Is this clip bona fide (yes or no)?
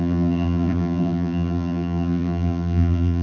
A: no